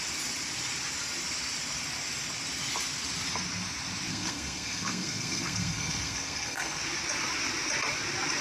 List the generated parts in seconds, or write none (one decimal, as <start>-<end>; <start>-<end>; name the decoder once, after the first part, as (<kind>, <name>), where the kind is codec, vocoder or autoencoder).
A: 4.1-6.8 (codec, SNAC)